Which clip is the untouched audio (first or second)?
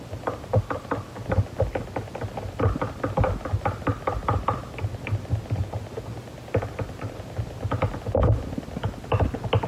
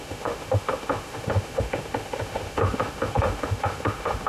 first